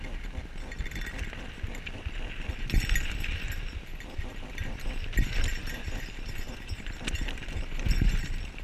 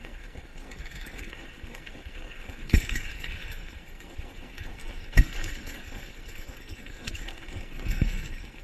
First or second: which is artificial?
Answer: second